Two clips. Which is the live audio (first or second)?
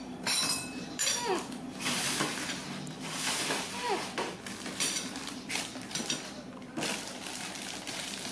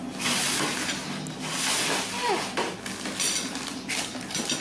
second